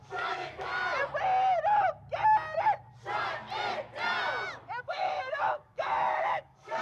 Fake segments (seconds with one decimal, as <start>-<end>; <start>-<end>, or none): 0.0-0.7; 4.8-6.8